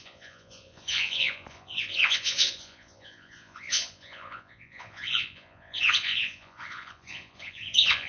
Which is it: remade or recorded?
remade